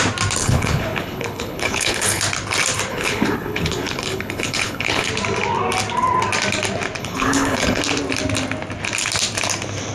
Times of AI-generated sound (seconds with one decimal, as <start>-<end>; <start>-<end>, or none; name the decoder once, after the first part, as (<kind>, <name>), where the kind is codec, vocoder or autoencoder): 0.4-2.2 (codec, HILCodec); 2.9-5.1; 7.0-7.8